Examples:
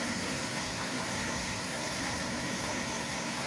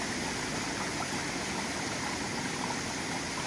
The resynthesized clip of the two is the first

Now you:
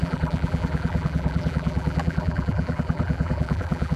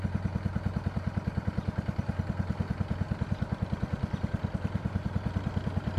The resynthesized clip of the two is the first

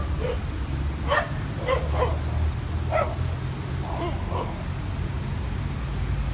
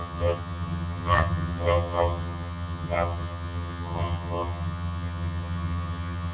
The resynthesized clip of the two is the second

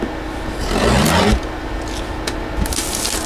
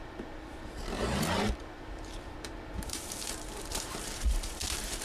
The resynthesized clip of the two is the second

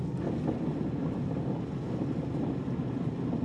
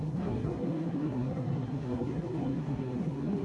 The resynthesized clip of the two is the second